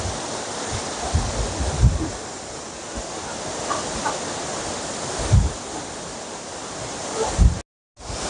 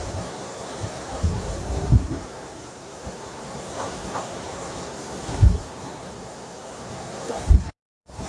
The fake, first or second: second